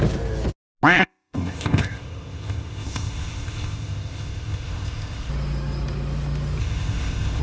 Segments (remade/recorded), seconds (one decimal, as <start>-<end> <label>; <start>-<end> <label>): 0.0-1.0 recorded; 1.0-5.3 remade; 5.3-6.6 recorded; 6.6-7.4 remade